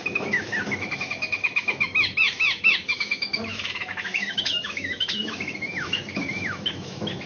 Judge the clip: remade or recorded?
remade